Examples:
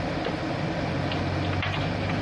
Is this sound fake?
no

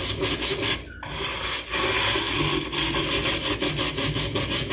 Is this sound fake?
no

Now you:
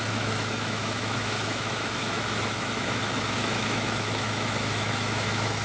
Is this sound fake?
yes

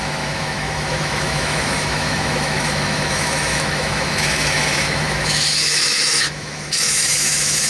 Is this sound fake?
yes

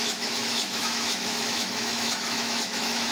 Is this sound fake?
yes